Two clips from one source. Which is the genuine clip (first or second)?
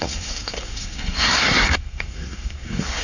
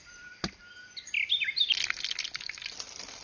second